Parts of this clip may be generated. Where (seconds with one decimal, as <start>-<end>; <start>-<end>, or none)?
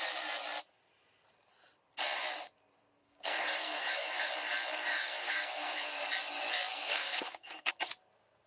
3.0-4.3; 4.9-6.0; 6.7-7.7